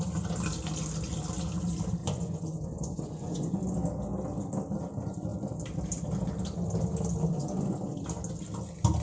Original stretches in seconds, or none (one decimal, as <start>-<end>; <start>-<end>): 0.0-2.0; 3.6-9.0